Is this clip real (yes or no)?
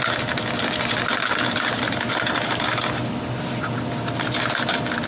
yes